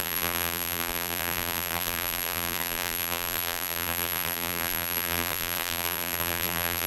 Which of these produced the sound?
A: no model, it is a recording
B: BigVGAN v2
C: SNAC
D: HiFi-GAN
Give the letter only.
B